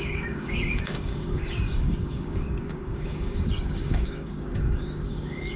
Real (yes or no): no